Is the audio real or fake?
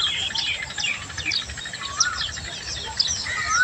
real